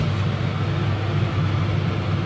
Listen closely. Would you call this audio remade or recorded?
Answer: recorded